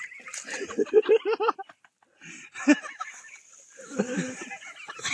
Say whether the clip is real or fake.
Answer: real